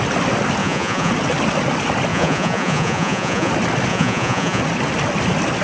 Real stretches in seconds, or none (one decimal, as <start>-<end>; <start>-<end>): 0.0-0.6; 1.1-2.1; 3.5-3.9; 4.6-5.6